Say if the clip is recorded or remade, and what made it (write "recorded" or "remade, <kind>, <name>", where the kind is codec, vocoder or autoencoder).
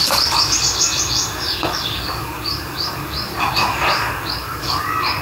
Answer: remade, codec, DAC